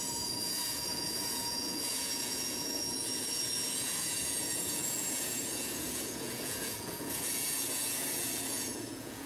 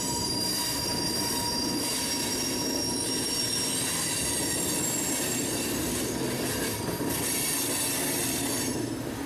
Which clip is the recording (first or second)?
second